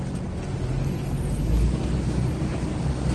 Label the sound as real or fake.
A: real